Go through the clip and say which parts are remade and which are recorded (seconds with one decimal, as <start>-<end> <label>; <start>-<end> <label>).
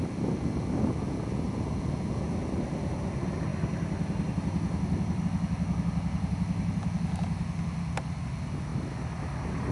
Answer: 0.0-3.5 recorded; 3.5-5.2 remade; 5.2-8.7 recorded; 8.7-9.7 remade